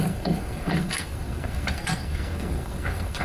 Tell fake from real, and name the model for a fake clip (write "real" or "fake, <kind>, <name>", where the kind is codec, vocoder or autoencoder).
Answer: fake, codec, SNAC